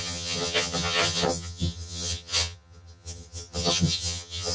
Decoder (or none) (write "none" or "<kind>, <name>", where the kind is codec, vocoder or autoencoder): vocoder, HiFi-GAN